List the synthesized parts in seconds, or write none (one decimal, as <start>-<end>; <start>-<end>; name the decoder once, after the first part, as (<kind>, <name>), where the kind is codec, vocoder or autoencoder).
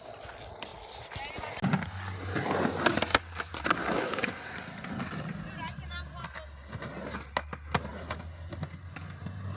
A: none